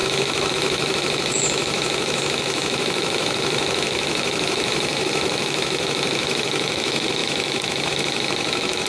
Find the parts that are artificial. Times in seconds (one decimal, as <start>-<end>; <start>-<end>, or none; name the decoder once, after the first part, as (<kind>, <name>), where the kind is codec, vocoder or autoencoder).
0.0-8.9 (autoencoder, DAC-VAE)

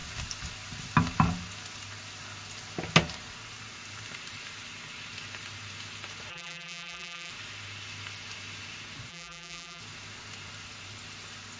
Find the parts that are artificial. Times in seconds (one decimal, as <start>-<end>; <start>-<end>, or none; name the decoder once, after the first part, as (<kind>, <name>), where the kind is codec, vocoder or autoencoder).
6.3-7.3 (vocoder, BigVGAN v2); 9.1-9.8

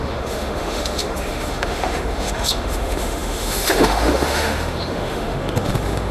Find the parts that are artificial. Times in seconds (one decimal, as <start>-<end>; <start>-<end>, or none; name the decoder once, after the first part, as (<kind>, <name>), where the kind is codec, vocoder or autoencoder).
0.0-6.1 (autoencoder, DAC-VAE)

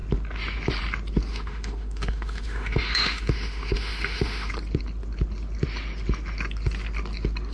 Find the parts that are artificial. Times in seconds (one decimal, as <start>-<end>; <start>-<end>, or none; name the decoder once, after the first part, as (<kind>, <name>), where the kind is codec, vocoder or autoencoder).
1.3-4.5 (autoencoder, DAC-VAE)

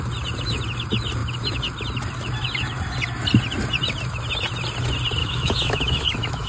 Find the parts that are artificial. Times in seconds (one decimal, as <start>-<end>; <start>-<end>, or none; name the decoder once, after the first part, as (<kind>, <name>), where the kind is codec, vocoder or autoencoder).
5.2-6.5 (autoencoder, DAC-VAE)

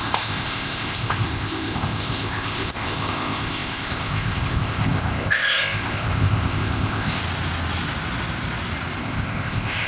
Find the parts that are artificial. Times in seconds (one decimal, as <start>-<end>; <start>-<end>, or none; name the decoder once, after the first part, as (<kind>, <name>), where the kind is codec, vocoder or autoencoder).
0.0-7.2 (codec, ZipCodec); 9.0-9.9